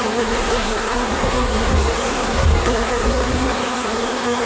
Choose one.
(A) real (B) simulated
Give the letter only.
B